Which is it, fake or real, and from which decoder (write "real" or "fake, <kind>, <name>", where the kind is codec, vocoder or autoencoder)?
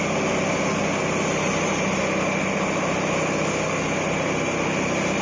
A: real